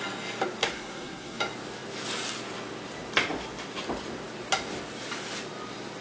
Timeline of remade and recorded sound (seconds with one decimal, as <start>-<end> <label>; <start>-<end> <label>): 0.0-0.6 recorded; 0.6-1.4 remade; 1.4-6.0 recorded